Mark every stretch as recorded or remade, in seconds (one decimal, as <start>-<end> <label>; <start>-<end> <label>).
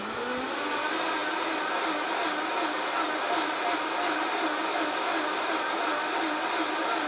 0.0-7.1 recorded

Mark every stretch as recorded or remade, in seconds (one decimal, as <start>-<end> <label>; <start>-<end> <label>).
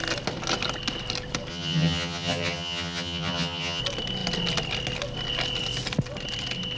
0.0-1.5 recorded; 1.5-3.8 remade; 3.8-6.8 recorded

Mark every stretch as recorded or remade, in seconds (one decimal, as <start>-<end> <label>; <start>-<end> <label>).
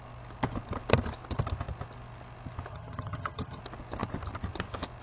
0.0-2.7 recorded; 2.7-3.6 remade; 3.6-5.0 recorded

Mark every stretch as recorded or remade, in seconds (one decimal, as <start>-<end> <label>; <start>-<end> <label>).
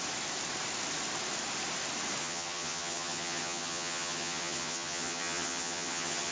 0.0-2.2 recorded; 2.2-6.3 remade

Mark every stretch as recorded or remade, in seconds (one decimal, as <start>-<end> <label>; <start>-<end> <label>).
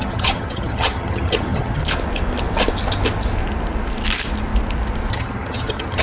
0.0-1.8 remade; 1.8-5.1 recorded; 5.1-6.0 remade